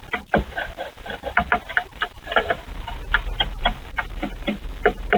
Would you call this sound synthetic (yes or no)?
yes